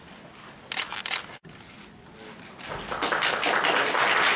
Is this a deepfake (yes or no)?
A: no